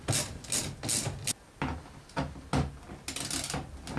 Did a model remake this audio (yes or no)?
no